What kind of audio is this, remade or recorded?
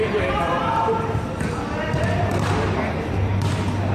remade